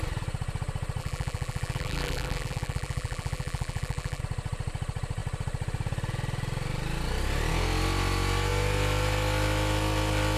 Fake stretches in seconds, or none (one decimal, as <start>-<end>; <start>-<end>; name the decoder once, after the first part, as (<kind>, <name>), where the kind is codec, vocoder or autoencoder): 1.0-4.2 (vocoder, BigVGAN v2)